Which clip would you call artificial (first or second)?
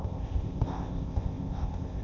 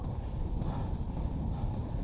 first